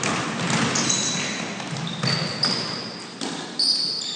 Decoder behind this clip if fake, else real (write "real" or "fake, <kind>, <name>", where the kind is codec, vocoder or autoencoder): real